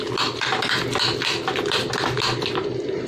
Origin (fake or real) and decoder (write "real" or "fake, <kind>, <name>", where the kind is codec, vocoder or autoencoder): real